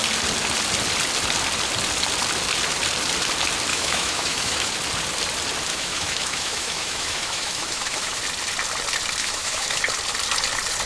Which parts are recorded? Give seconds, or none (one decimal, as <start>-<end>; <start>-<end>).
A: 0.0-3.7; 4.7-5.7; 8.2-9.2; 9.8-10.9